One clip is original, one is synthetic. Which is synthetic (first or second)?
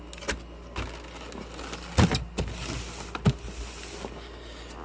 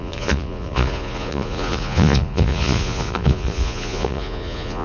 second